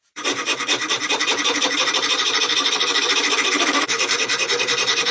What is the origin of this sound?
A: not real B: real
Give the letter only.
A